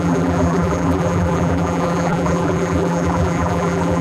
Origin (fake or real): fake